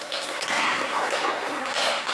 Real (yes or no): no